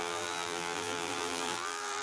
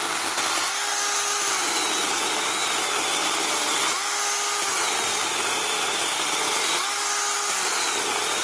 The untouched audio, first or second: second